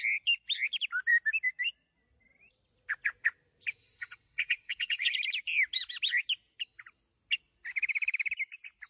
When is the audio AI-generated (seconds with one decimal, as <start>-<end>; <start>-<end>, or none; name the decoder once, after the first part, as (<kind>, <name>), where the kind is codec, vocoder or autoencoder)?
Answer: 3.8-5.1 (vocoder, WaveNeXt)